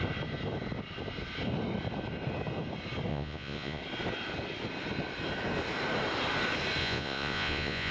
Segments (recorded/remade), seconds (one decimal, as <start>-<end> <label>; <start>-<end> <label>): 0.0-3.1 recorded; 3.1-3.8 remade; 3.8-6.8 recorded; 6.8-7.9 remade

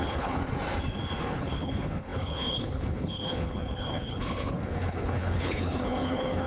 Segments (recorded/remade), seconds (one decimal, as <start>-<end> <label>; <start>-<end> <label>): 0.0-0.4 remade; 0.4-1.2 recorded; 1.2-6.5 remade

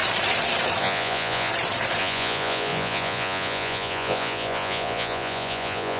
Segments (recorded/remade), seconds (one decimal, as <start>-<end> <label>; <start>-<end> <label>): 0.0-0.8 recorded; 0.8-1.5 remade; 1.5-2.0 recorded; 2.0-6.0 remade

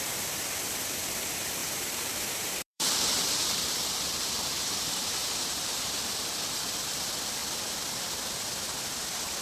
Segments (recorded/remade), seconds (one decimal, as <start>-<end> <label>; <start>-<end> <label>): 0.0-1.6 recorded; 1.6-5.8 remade; 5.8-9.4 recorded

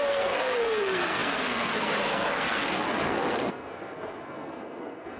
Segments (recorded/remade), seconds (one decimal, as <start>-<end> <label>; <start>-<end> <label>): 0.0-5.2 remade